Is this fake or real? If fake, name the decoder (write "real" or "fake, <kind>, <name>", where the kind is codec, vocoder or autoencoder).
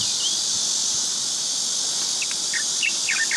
real